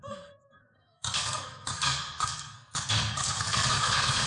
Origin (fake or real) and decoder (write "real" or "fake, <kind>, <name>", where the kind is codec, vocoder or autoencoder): fake, codec, SNAC